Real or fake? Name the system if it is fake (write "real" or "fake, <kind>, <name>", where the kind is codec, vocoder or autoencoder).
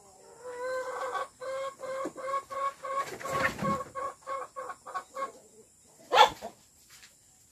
real